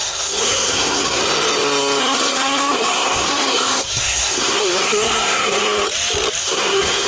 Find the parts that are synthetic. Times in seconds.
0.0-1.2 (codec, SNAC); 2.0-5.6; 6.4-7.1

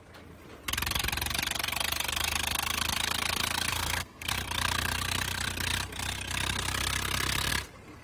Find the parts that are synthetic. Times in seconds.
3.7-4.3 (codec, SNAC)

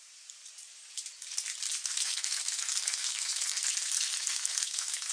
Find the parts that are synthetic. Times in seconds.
1.8-5.1 (codec, SNAC)

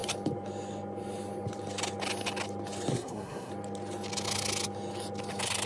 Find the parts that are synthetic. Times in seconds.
2.9-3.5 (codec, SNAC)

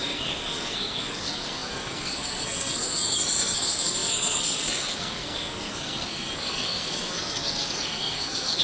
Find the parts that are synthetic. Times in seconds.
0.0-8.6 (codec, SNAC)

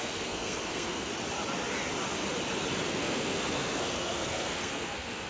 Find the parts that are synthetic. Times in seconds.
0.0-1.1 (codec, SNAC); 2.9-5.3

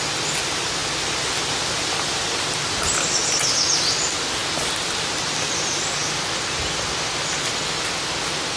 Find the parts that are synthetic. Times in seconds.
none

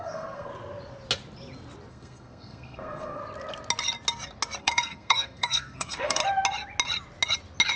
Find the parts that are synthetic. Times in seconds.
0.0-0.5 (codec, SNAC); 1.9-3.2; 4.6-6.2